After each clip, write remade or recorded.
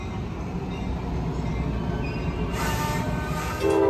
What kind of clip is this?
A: recorded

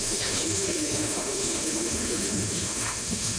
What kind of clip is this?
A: remade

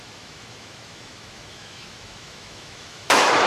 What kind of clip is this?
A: remade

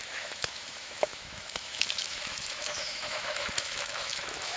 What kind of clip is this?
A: remade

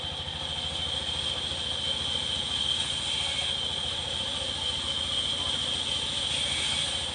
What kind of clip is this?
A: recorded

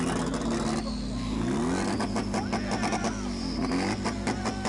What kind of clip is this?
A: recorded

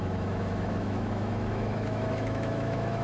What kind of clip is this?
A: remade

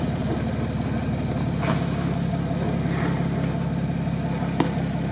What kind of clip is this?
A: recorded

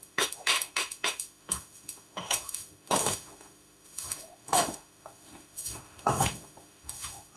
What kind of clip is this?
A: remade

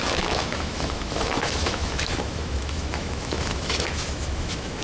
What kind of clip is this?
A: remade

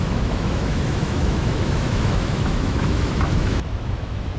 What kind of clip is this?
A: remade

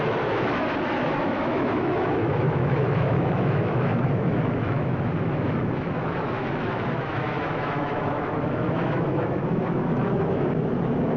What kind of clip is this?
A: remade